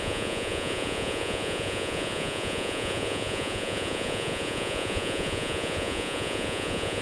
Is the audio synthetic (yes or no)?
yes